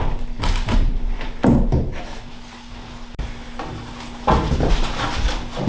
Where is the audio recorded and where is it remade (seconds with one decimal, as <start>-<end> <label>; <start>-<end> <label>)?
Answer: 0.0-5.7 recorded

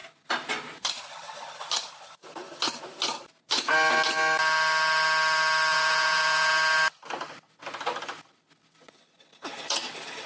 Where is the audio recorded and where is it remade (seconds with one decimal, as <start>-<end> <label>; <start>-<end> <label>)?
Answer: 0.0-5.7 recorded; 5.7-6.5 remade; 6.5-10.3 recorded

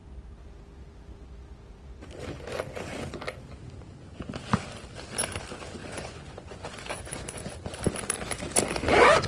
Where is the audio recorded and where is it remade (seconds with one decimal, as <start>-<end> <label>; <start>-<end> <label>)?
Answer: 0.0-5.8 recorded; 5.8-7.5 remade; 7.5-9.3 recorded

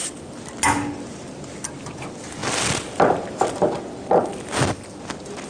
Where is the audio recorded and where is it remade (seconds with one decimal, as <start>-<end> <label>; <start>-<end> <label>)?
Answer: 0.0-5.5 recorded